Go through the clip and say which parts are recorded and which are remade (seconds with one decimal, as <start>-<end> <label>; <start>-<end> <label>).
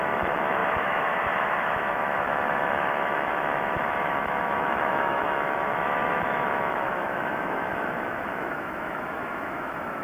0.0-10.0 remade